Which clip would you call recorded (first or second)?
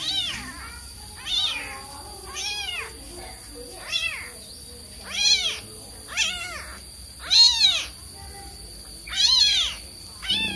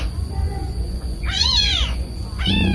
first